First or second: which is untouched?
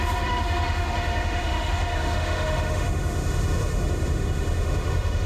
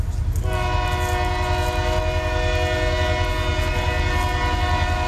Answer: second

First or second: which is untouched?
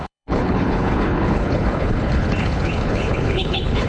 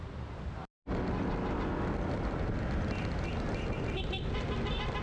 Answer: second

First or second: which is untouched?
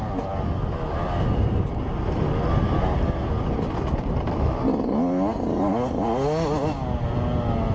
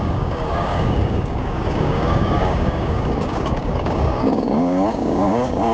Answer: first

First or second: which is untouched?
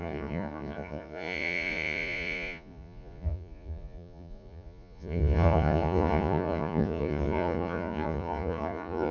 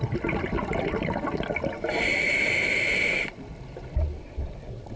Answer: second